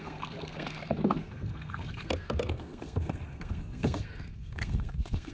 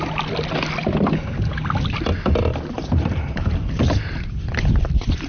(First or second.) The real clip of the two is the second